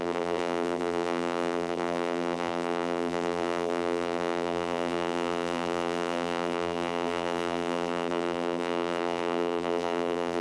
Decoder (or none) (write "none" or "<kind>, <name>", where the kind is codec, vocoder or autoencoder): vocoder, BigVGAN v2